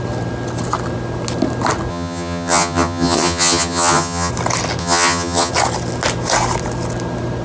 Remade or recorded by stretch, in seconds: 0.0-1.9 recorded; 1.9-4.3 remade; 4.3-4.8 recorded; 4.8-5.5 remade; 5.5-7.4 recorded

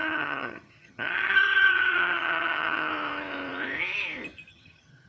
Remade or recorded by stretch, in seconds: 0.0-2.9 remade; 2.9-4.5 recorded; 4.5-5.1 remade

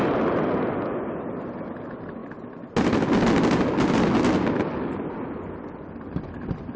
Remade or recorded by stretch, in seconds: 0.0-6.8 recorded

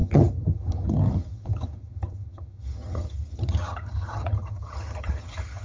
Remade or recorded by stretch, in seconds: 0.0-5.6 remade